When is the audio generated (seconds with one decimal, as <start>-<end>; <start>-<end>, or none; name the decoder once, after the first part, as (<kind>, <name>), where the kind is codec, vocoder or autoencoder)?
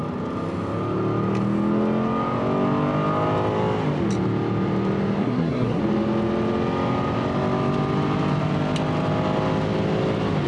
5.2-5.8 (codec, SNAC)